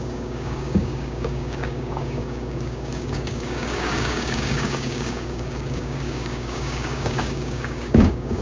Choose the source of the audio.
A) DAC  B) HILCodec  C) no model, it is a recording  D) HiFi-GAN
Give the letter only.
A